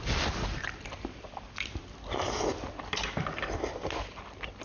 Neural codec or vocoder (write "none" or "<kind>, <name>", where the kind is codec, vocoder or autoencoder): none